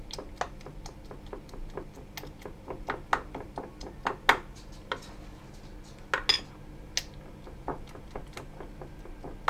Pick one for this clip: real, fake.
real